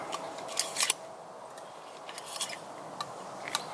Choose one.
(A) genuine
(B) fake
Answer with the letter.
A